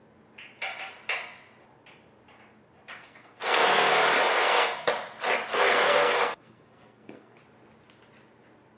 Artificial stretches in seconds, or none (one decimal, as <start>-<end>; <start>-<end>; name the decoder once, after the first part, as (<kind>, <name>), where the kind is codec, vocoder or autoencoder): 2.9-3.9 (codec, SNAC); 4.3-4.9; 5.5-7.4